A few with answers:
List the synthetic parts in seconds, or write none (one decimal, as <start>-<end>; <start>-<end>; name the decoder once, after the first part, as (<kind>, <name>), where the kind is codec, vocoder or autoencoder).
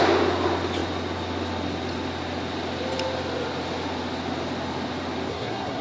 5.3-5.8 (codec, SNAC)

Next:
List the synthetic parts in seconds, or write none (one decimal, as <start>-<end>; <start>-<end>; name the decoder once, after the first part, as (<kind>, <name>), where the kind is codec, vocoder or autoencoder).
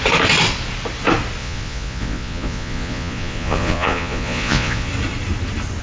1.4-4.9 (vocoder, Vocos)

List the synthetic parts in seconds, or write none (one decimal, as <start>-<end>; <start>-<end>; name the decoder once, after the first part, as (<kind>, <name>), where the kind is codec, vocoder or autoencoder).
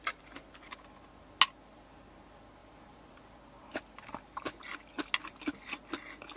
2.6-3.4 (vocoder, BigVGAN v2)